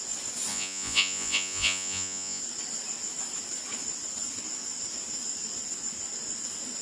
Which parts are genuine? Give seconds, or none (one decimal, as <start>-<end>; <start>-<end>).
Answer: 0.0-0.5; 2.4-6.8